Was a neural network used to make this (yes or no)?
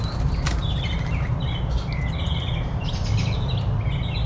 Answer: no